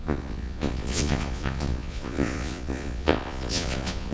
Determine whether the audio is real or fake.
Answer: fake